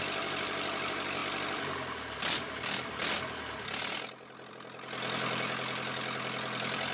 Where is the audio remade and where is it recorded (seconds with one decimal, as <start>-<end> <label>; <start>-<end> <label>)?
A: 0.0-6.9 recorded